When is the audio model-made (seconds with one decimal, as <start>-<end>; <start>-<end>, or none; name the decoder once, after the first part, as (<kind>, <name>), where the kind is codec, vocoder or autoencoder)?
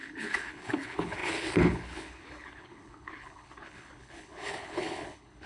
0.0-5.5 (codec, HILCodec)